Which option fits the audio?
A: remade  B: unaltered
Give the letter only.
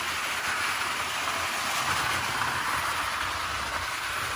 B